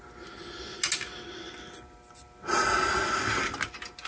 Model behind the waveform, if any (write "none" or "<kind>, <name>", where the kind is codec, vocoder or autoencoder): none